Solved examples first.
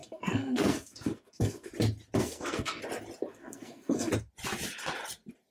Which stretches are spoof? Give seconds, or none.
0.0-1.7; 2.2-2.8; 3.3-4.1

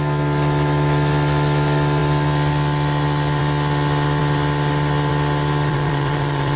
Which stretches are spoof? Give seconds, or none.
5.7-6.6